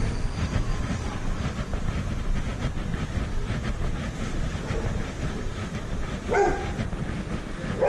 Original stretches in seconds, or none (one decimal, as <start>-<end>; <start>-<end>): 0.0-7.9